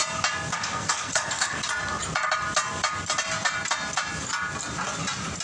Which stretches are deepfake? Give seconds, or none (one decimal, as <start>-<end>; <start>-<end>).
0.5-1.6

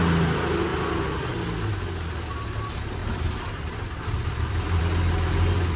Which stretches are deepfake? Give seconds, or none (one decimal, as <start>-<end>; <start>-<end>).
3.0-4.8

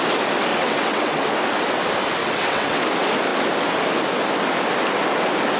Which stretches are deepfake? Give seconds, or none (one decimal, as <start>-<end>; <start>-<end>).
0.5-1.2; 2.2-2.8

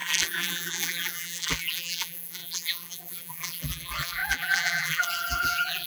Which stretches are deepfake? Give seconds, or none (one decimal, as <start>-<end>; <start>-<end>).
0.0-5.9

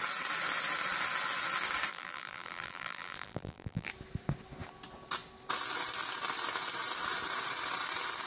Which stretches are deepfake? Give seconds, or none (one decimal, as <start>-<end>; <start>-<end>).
1.9-3.9

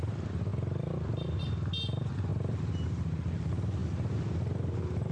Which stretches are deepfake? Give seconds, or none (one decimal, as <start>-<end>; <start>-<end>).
none